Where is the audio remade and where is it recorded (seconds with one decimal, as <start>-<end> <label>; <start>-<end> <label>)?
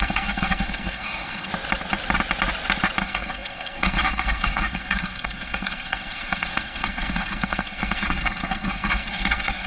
0.0-1.5 remade; 1.5-3.0 recorded; 3.0-9.7 remade